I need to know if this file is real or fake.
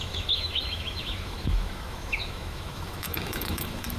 fake